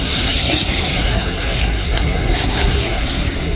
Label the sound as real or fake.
fake